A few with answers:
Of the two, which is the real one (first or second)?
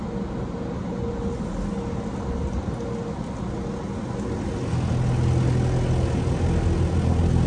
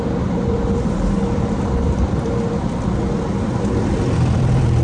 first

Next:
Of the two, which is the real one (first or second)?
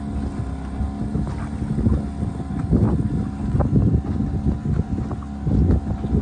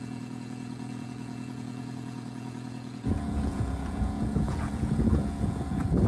first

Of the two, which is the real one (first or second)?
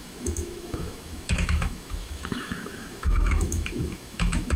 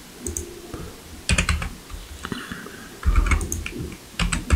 second